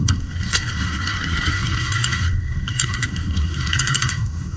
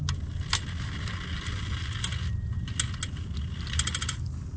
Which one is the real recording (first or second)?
second